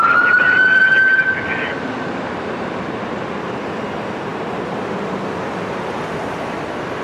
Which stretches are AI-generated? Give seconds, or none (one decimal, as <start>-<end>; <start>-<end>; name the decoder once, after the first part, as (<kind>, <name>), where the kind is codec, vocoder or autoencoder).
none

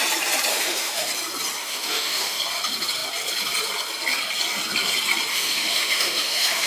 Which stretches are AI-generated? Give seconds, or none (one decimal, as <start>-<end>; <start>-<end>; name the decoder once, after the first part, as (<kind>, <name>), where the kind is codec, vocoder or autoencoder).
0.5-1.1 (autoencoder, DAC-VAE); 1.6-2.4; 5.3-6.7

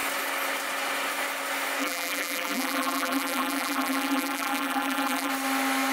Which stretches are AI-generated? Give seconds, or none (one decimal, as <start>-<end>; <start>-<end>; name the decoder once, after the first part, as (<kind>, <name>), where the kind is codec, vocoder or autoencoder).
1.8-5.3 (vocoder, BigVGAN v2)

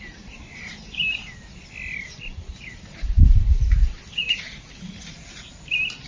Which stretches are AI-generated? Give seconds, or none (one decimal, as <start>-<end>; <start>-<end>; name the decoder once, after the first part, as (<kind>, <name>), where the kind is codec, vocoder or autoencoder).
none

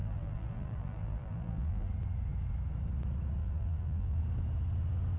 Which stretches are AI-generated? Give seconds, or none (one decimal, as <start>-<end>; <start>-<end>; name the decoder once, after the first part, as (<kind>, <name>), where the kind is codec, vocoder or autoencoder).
0.0-1.9 (vocoder, BigVGAN v2); 3.4-4.2

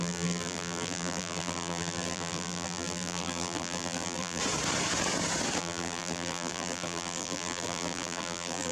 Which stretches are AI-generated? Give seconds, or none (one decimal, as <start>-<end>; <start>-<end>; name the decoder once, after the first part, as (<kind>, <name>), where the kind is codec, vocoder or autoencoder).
0.0-4.4 (vocoder, BigVGAN v2); 5.6-8.7

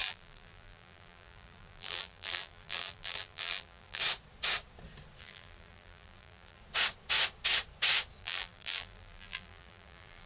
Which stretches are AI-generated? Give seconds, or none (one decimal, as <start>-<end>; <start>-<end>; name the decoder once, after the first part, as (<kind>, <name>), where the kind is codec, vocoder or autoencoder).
0.0-4.0 (vocoder, BigVGAN v2); 5.2-6.6; 8.2-10.3

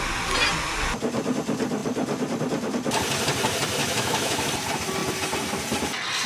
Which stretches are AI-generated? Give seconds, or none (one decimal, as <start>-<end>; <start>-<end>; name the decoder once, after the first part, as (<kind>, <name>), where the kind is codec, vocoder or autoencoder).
3.8-4.5 (autoencoder, DAC-VAE)